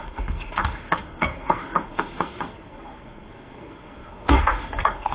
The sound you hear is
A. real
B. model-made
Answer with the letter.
B